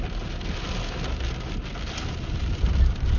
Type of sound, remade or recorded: recorded